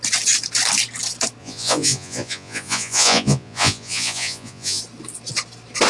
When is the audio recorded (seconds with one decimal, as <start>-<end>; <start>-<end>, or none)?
0.0-1.4; 4.8-5.9